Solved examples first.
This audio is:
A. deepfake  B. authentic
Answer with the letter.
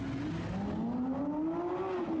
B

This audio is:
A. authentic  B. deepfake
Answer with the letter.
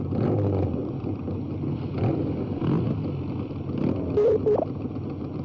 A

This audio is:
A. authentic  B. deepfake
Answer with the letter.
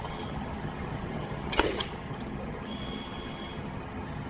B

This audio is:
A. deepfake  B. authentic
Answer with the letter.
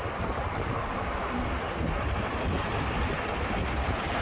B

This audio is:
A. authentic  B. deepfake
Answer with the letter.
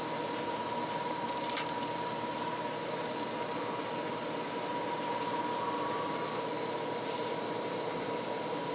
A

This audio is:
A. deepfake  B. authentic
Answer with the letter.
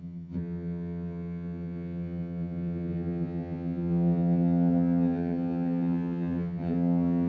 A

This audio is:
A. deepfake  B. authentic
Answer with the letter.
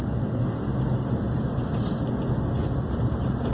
B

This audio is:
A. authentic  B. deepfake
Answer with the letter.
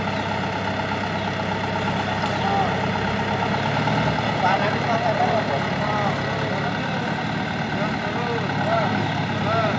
A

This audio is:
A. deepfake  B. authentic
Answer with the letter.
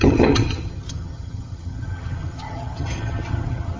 A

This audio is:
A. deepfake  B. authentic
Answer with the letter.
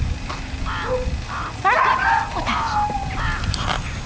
B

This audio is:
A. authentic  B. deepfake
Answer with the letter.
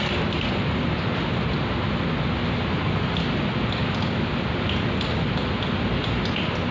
A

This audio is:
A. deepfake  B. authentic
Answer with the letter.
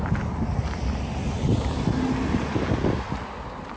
B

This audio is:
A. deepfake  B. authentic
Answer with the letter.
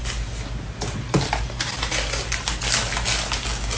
B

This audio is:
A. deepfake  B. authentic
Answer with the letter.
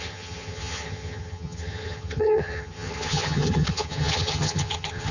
A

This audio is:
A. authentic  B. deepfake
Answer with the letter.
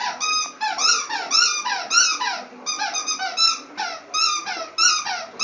A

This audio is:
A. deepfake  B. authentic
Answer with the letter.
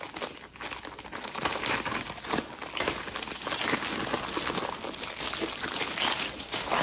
B